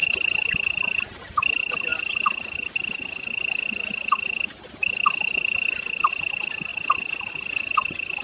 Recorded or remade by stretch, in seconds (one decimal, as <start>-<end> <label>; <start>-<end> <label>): 0.0-8.2 recorded